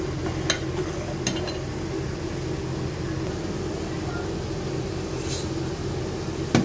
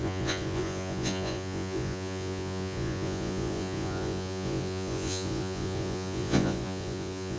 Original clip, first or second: first